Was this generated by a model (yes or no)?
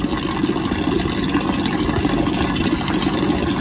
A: no